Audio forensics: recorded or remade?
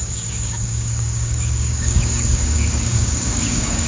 remade